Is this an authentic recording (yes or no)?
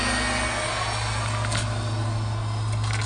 yes